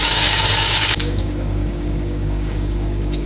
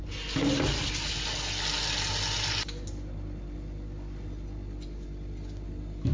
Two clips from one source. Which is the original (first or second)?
second